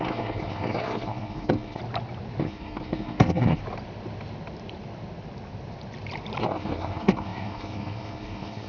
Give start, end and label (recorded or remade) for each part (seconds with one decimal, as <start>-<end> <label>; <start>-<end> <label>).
0.0-1.8 remade; 1.8-2.4 recorded; 2.4-3.6 remade; 3.6-6.4 recorded; 6.4-8.7 remade